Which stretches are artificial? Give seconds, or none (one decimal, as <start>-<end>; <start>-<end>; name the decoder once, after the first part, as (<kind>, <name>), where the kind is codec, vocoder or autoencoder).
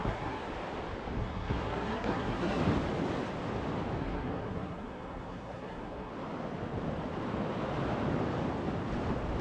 0.0-0.5 (codec, SNAC); 1.2-2.6; 4.0-6.1